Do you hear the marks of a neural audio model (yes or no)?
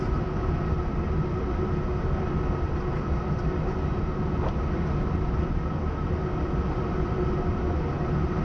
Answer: no